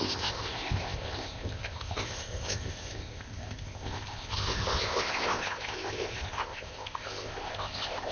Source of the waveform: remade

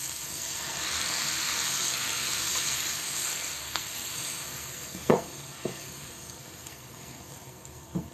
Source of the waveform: remade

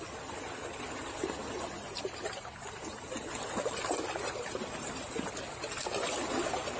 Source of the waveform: recorded